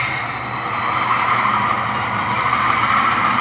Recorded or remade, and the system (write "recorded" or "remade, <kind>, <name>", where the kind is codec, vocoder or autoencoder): remade, vocoder, BigVGAN v2